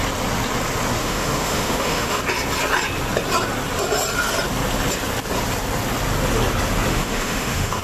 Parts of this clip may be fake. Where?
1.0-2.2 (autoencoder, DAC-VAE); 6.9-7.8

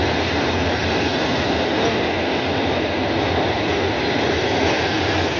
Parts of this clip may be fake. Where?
none

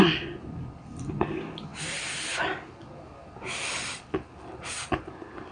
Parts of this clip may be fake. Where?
none

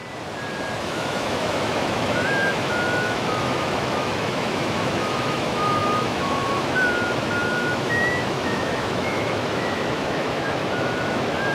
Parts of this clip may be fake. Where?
0.8-11.5 (autoencoder, DAC-VAE)

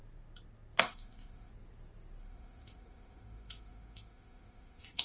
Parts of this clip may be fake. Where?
0.8-1.5 (autoencoder, DAC-VAE); 2.2-5.0